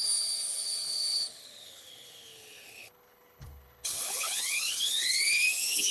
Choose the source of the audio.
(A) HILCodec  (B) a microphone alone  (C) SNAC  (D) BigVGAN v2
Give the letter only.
A